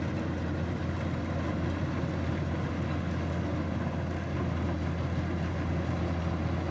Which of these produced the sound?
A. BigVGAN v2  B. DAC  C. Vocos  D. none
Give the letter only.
D